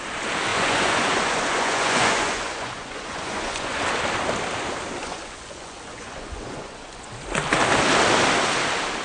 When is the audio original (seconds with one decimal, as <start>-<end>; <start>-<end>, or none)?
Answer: 0.0-0.5; 3.8-5.0; 7.1-9.0